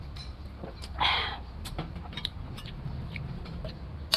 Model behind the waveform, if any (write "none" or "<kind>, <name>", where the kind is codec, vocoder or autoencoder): vocoder, BigVGAN v2